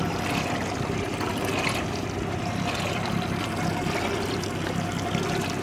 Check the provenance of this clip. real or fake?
real